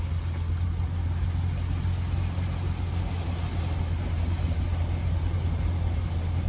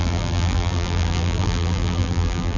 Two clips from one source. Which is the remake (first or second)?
second